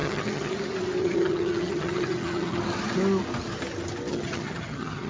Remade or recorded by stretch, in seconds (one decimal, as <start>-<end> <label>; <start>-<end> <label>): 0.0-0.5 remade; 0.5-1.0 recorded; 1.0-2.6 remade; 2.6-4.1 recorded; 4.1-5.1 remade